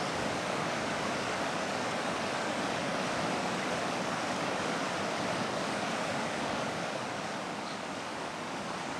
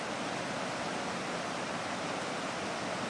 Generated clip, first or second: first